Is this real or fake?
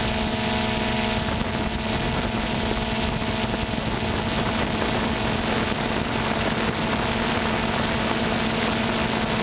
real